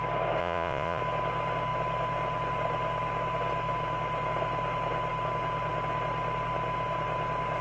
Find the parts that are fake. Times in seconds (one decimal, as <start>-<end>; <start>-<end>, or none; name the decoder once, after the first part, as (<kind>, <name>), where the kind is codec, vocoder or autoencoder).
0.4-1.0 (vocoder, Vocos)